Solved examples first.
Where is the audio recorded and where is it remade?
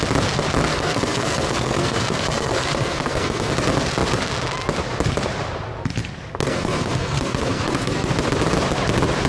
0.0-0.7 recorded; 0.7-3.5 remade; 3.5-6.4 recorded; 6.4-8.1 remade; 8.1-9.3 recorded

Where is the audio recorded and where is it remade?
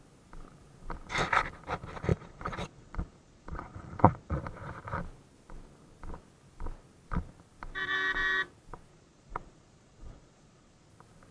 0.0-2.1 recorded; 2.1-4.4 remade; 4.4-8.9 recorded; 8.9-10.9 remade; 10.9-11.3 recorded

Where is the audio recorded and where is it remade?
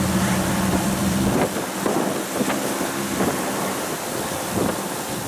0.0-5.3 remade